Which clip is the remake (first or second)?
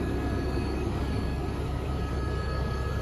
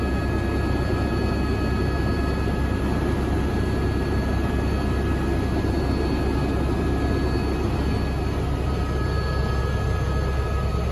first